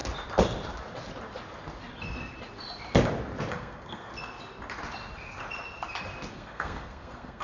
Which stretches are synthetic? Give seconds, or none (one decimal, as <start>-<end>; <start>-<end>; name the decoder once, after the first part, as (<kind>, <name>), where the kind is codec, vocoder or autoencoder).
3.5-4.1 (codec, SNAC); 6.3-7.4